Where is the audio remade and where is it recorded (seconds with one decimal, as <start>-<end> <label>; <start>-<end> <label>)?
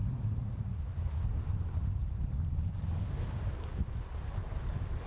0.0-5.1 recorded